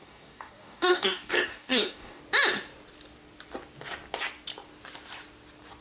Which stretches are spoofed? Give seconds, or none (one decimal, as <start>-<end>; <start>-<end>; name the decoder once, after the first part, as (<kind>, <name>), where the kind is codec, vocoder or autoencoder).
0.0-2.2 (codec, DAC)